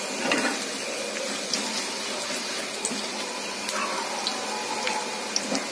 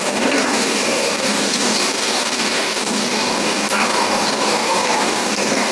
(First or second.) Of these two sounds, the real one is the first